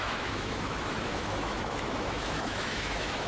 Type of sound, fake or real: fake